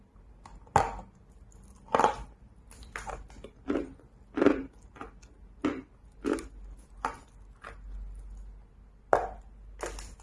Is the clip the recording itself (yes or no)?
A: yes